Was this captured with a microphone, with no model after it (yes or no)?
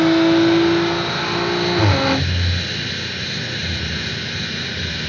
yes